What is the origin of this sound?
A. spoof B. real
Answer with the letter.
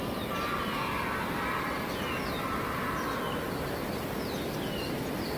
B